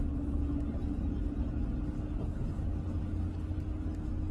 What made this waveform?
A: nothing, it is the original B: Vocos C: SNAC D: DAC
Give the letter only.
A